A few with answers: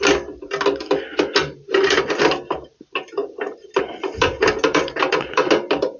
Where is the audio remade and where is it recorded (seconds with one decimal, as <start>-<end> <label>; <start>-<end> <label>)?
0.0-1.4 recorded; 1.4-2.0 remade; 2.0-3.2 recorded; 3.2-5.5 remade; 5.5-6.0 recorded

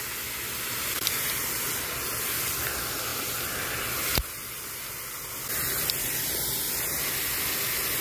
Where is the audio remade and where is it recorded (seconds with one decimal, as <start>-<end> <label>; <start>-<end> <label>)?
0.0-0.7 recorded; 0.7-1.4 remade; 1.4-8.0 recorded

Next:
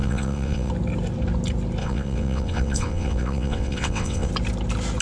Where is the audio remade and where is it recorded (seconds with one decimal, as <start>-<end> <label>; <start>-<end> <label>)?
0.0-0.7 remade; 0.7-1.8 recorded; 1.8-4.3 remade; 4.3-5.0 recorded

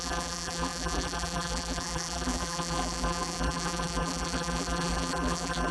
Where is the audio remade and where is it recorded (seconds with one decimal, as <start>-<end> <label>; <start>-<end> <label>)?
0.0-5.7 remade